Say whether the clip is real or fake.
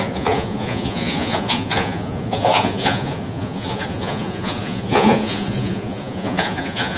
fake